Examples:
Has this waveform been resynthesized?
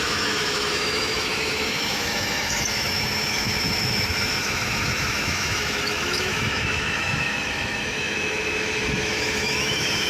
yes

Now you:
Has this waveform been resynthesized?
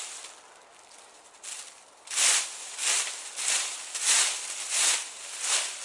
no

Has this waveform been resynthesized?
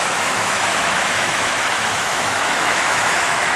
yes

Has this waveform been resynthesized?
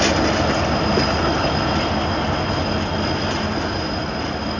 no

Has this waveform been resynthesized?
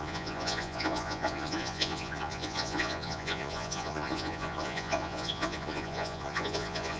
yes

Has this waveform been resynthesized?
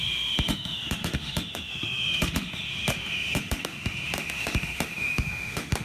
yes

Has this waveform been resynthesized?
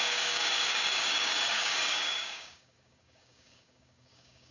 yes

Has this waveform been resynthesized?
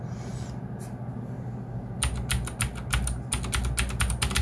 no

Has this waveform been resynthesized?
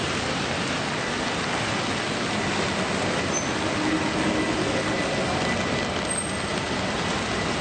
no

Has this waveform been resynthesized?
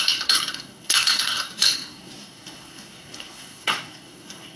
yes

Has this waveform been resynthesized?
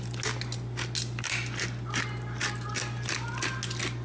no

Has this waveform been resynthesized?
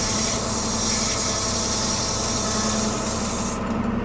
no